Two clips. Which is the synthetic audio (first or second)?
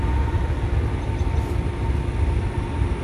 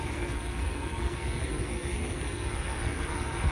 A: second